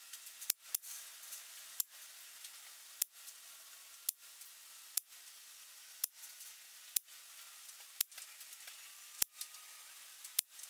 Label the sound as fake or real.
real